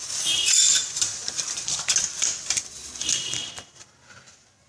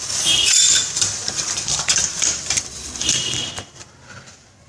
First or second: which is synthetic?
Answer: second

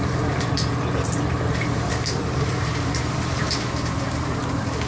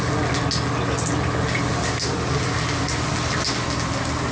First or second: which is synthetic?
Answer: first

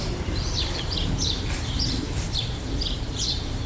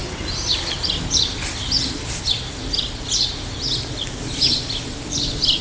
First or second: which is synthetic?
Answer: first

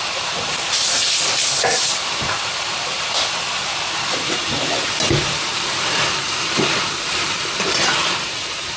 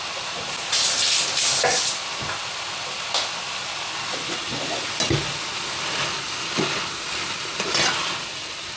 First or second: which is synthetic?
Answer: first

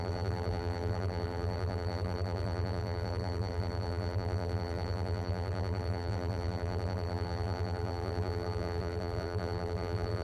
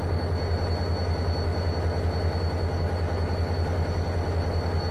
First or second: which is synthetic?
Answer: first